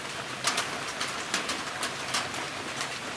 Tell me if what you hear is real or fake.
real